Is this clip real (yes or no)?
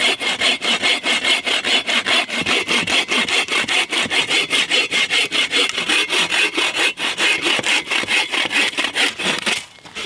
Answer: yes